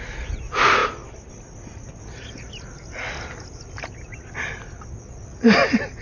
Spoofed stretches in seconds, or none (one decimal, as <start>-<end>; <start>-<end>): none